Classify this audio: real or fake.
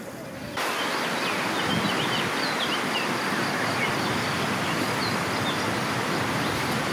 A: real